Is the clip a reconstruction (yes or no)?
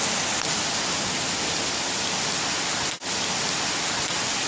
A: no